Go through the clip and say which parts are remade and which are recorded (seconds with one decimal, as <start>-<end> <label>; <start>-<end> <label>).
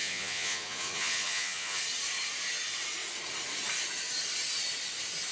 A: 0.0-1.8 remade; 1.8-5.3 recorded